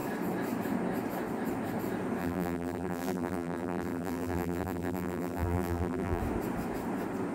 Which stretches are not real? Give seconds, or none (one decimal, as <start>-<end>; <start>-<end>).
2.2-6.2